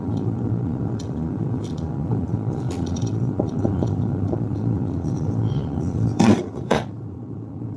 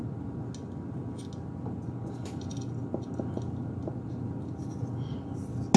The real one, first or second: second